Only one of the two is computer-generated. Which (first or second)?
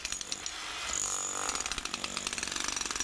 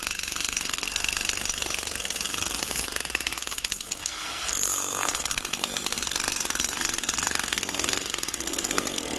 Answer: second